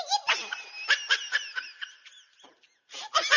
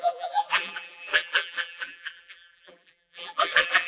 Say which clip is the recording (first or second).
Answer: first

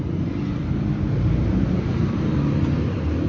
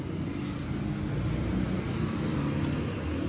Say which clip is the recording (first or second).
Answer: second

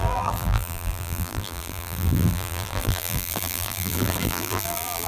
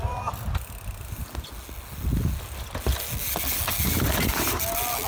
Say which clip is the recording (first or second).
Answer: second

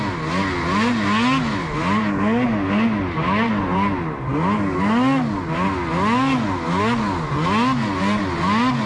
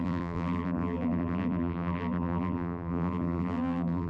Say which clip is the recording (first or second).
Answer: first